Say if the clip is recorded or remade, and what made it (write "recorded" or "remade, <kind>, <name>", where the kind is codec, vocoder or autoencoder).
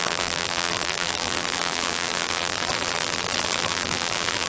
remade, vocoder, BigVGAN v2